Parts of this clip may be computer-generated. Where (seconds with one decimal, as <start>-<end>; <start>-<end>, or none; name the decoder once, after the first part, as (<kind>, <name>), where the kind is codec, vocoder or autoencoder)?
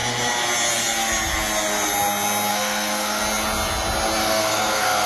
2.5-3.2 (codec, SNAC); 4.2-5.1